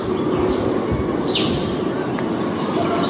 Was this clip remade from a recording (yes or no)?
no